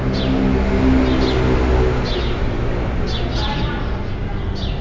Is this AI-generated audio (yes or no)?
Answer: no